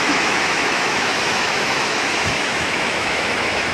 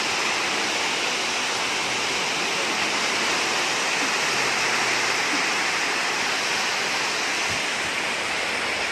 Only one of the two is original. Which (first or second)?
second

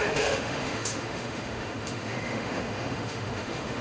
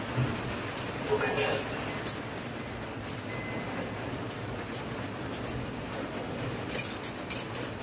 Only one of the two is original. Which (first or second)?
second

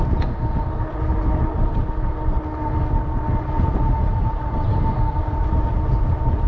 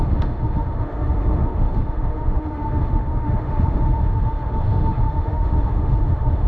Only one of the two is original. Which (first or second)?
first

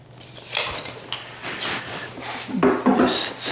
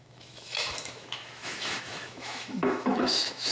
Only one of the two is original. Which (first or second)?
first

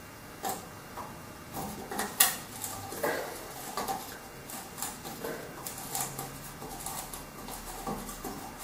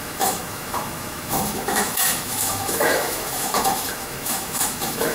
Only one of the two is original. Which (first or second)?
first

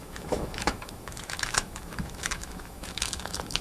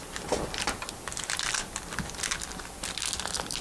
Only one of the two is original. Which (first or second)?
second